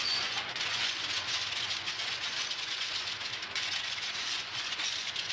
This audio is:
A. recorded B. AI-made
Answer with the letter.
B